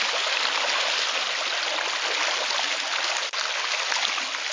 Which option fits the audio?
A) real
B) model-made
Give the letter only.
A